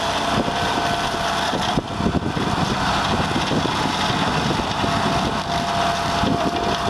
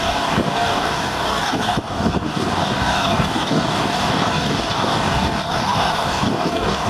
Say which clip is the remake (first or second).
second